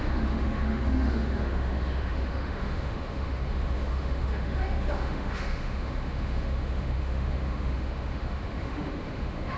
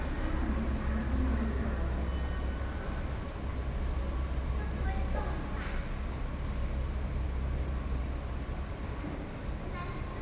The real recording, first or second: second